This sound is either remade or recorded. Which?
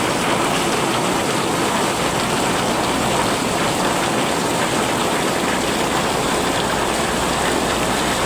remade